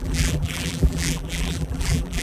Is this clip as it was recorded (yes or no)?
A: no